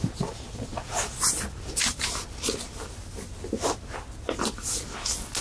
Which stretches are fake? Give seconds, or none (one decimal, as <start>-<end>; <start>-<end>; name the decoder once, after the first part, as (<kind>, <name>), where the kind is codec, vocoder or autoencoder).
none